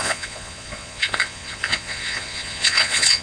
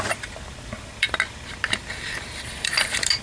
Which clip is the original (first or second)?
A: second